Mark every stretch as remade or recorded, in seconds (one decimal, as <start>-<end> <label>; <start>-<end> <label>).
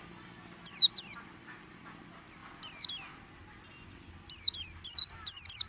0.0-2.4 remade; 2.4-4.4 recorded; 4.4-5.7 remade